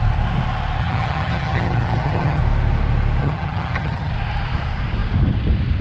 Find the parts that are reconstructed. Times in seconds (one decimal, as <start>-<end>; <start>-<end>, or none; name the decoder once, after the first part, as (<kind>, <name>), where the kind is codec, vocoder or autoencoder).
0.8-2.4 (vocoder, HiFi-GAN); 3.2-4.1